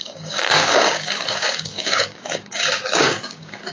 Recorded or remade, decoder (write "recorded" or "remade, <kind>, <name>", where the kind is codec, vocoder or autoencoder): remade, codec, DAC